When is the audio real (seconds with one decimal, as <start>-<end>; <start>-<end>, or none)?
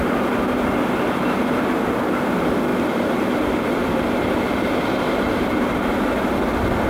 0.0-2.7; 4.0-6.9